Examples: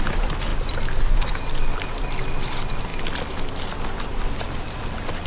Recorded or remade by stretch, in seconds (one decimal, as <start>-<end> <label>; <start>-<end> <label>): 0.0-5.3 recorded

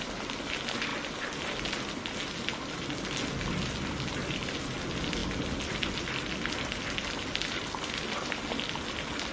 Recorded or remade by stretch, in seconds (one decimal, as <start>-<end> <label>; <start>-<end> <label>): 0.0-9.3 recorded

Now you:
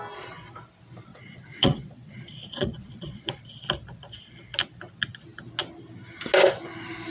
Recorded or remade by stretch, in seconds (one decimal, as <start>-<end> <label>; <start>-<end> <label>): 0.0-1.1 recorded; 1.1-3.4 remade; 3.4-7.1 recorded